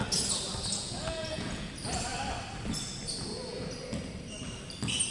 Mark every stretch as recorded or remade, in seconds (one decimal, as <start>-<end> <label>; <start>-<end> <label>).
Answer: 0.0-0.7 recorded; 0.7-1.7 remade; 1.7-5.1 recorded